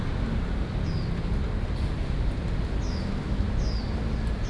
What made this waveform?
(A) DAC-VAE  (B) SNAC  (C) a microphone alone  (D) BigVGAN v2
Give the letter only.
C